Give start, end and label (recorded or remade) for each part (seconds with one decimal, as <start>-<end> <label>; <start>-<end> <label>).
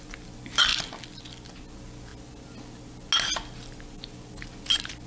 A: 0.0-5.1 recorded